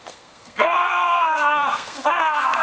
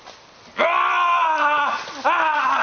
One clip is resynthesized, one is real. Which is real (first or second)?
second